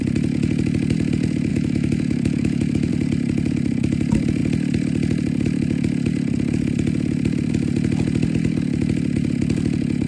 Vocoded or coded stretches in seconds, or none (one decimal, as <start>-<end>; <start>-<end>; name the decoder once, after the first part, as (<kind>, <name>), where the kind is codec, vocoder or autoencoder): 1.5-2.9 (autoencoder, DAC-VAE)